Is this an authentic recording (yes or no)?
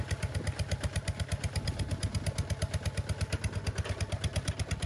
yes